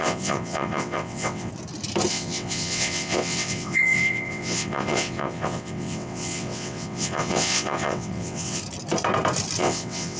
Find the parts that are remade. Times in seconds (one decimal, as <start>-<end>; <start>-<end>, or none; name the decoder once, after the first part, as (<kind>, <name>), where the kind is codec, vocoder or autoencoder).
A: 0.0-1.5 (vocoder, WaveNeXt); 2.1-8.6; 9.6-10.2